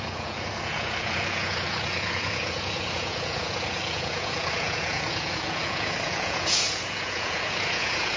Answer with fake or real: fake